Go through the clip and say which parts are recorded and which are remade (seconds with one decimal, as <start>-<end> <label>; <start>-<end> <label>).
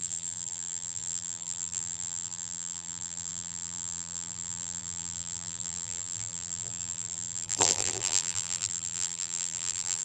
0.0-10.0 remade